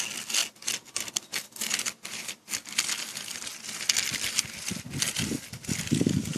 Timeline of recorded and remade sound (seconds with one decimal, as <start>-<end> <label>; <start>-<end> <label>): 0.0-6.4 recorded